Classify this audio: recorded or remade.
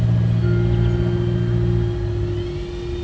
recorded